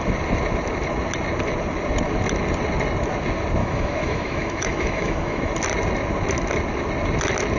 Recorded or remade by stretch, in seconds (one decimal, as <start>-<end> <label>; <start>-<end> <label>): 0.0-3.6 recorded; 3.6-5.5 remade; 5.5-7.6 recorded